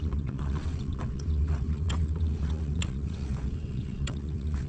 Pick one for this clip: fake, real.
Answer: fake